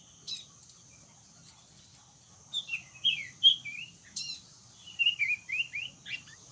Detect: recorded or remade recorded